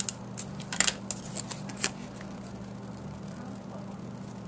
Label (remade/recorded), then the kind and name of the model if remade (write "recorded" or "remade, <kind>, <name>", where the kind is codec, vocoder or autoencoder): recorded